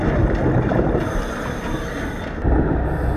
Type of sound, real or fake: real